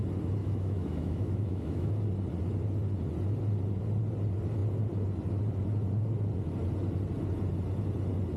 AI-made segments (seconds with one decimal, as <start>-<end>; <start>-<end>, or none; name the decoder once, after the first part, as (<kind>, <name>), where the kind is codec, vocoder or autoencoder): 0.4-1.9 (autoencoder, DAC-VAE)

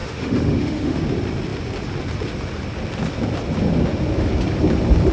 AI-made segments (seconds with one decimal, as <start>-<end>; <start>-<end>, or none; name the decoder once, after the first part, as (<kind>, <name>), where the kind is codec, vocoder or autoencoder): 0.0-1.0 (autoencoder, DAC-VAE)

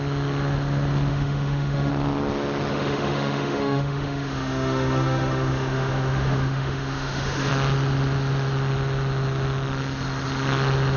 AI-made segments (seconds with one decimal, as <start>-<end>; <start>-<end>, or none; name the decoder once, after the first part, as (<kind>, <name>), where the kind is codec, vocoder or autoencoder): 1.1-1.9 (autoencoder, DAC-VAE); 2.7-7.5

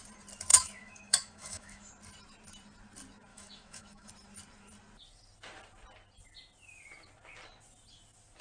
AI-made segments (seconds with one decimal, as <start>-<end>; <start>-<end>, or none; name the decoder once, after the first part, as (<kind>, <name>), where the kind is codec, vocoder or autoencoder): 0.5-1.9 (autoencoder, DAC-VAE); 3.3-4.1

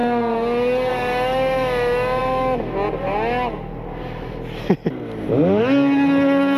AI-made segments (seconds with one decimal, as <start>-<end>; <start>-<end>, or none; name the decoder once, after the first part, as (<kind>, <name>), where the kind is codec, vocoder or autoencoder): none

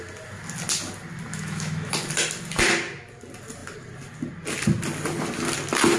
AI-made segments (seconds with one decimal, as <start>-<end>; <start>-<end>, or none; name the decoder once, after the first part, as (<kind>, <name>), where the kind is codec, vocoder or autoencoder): 1.3-1.9 (autoencoder, DAC-VAE)

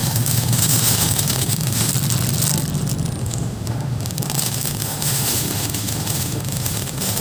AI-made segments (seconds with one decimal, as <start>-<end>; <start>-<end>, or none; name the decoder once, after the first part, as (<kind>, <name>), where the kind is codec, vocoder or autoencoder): 0.0-1.9 (autoencoder, DAC-VAE); 3.2-7.2

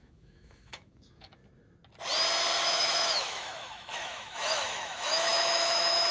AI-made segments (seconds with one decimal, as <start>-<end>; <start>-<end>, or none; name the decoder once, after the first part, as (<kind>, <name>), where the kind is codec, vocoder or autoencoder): 0.0-1.4 (autoencoder, DAC-VAE); 2.6-6.1